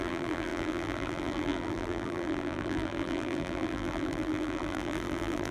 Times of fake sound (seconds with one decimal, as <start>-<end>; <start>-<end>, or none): 0.0-5.5